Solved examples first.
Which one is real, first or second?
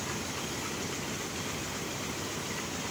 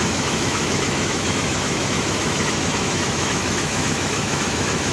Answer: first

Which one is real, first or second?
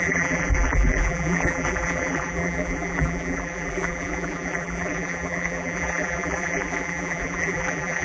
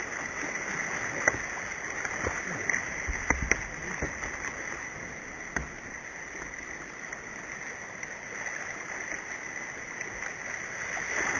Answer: second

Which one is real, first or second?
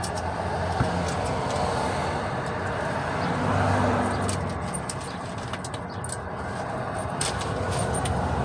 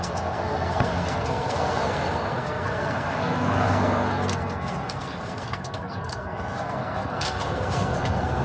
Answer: first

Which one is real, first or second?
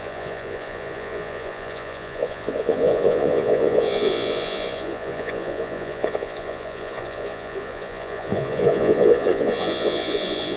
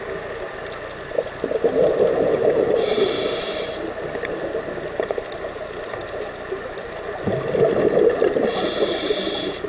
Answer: second